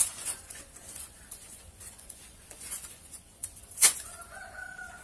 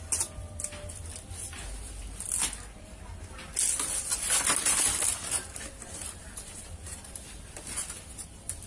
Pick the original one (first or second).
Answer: second